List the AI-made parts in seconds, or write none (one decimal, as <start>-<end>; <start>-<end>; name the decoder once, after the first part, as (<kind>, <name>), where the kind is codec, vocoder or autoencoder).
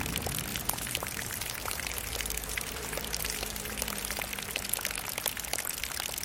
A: 0.5-4.2 (vocoder, BigVGAN v2)